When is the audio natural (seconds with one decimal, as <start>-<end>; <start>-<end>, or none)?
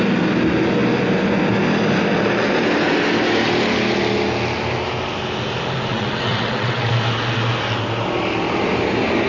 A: 0.0-5.9; 6.9-9.3